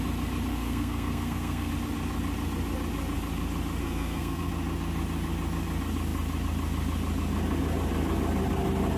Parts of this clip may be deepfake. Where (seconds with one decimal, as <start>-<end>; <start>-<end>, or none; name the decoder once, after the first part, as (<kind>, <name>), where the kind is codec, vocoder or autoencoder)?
0.5-1.7 (codec, SNAC); 3.8-4.5